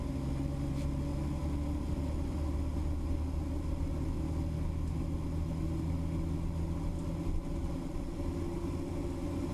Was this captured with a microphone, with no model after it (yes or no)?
yes